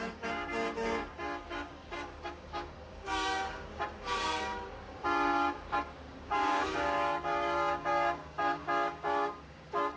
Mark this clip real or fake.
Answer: fake